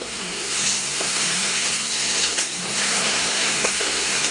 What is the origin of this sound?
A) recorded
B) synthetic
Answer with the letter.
B